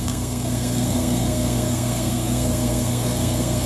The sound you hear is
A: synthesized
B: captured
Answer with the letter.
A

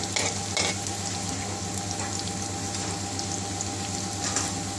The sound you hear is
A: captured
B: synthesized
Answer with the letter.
A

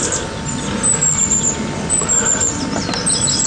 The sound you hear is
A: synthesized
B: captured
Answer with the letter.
B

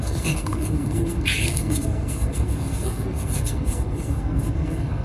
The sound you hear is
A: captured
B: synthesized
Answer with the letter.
B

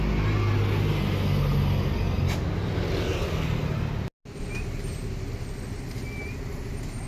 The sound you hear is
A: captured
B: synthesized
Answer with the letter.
A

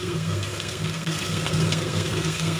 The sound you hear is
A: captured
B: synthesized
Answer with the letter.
B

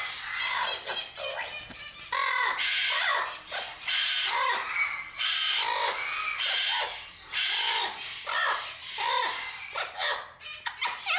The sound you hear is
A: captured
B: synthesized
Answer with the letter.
A